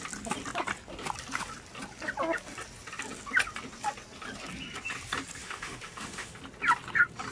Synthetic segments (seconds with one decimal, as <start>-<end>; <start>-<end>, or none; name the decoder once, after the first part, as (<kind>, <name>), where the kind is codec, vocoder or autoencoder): 5.4-6.4 (autoencoder, DAC-VAE)